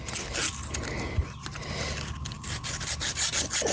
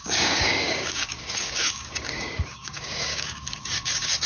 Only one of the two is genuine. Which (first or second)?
first